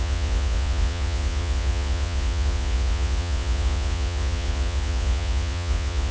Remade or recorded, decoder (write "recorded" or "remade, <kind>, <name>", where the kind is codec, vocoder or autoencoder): remade, vocoder, Vocos